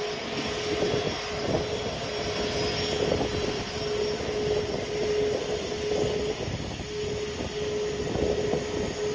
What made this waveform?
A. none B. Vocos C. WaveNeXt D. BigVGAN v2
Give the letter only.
A